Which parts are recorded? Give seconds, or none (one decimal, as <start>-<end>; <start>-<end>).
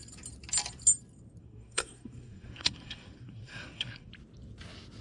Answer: 0.0-1.4; 4.1-5.0